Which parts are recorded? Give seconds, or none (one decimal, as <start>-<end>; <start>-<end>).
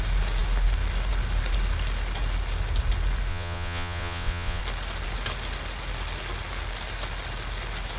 0.0-3.3; 4.6-8.0